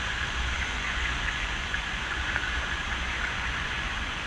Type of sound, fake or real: fake